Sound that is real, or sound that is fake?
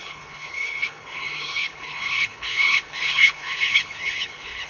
fake